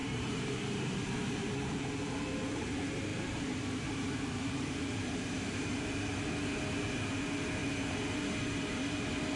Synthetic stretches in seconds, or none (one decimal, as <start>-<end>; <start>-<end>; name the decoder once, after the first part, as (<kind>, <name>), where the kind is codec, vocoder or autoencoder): 0.0-1.8 (vocoder, BigVGAN v2); 3.1-5.8; 7.6-8.2

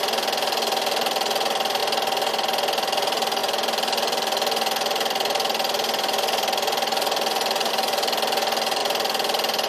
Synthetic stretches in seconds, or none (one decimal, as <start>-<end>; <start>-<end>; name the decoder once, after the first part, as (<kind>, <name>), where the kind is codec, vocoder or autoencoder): none

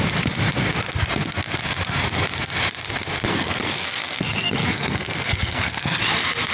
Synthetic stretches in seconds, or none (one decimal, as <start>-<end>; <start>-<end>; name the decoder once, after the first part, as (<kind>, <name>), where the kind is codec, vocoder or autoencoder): 3.3-6.0 (codec, SNAC)